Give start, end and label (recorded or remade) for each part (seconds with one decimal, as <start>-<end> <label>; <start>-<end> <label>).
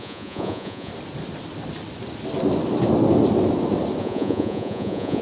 0.0-0.9 remade; 0.9-4.0 recorded; 4.0-5.2 remade